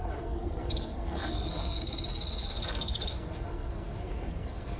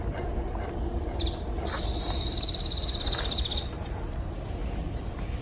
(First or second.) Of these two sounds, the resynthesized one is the first